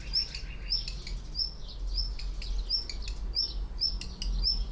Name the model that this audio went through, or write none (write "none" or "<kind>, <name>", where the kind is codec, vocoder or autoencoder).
none